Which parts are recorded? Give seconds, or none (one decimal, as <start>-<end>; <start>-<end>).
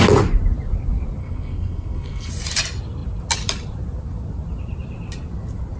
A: 0.0-1.2; 2.3-5.8